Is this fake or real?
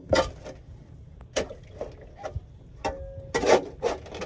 real